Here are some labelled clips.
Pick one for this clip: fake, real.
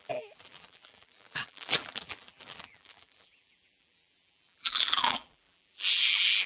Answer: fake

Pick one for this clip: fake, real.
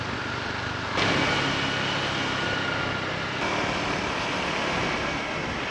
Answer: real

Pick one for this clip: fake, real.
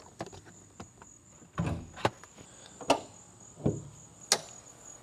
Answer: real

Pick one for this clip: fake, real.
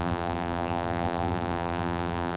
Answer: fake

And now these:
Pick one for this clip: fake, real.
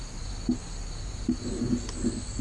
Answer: real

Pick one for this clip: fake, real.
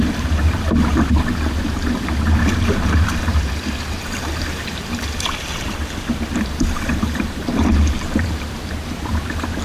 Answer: fake